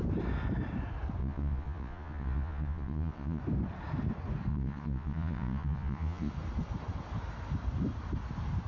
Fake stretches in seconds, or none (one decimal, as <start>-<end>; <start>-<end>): 1.2-3.4; 4.5-6.3